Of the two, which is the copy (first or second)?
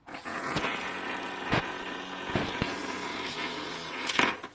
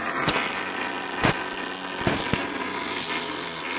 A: first